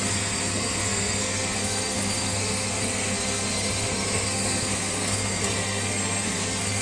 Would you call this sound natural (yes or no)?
no